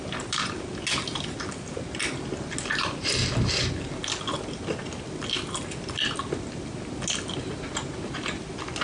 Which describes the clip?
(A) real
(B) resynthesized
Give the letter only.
A